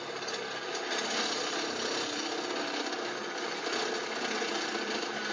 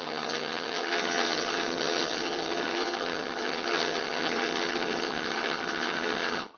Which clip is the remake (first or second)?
second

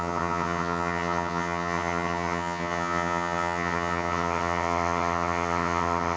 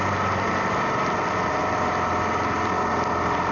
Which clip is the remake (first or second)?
first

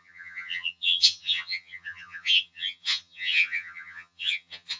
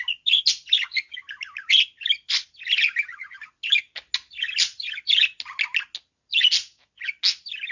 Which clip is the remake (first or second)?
first